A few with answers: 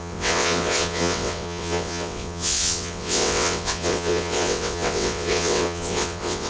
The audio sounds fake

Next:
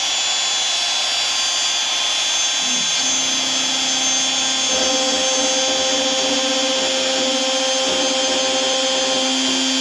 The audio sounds real